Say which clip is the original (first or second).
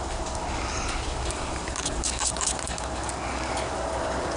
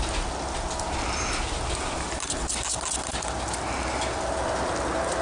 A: second